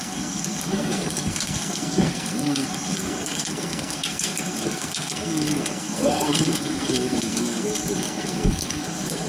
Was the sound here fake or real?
fake